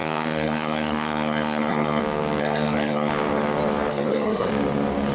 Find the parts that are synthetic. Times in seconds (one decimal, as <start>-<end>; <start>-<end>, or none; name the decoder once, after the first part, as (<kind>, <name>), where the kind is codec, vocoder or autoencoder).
0.0-2.0 (codec, SNAC); 2.4-3.1; 3.9-4.5